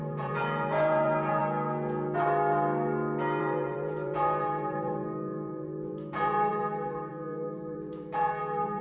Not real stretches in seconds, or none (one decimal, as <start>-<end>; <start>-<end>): 0.0-1.4; 3.4-8.8